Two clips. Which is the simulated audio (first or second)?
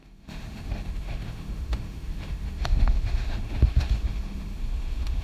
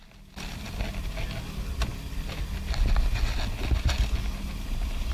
first